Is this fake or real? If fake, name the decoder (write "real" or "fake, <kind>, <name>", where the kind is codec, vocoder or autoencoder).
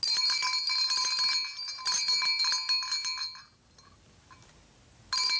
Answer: real